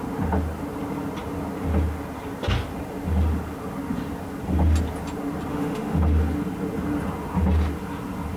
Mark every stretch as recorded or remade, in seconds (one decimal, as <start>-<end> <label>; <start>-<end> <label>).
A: 0.0-5.5 recorded; 5.5-6.0 remade; 6.0-8.4 recorded